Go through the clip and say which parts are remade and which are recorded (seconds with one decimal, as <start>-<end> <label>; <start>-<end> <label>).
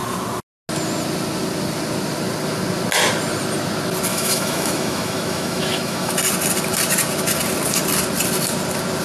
0.0-4.1 recorded; 4.1-6.1 remade; 6.1-9.0 recorded